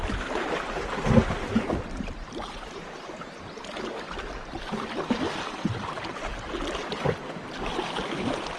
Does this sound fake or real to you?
real